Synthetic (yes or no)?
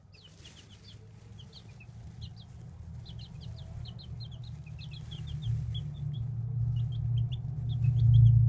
no